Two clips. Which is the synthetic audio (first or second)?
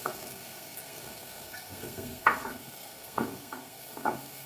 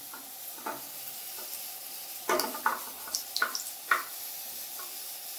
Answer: first